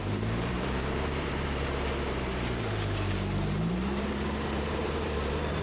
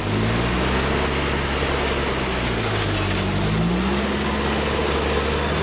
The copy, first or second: first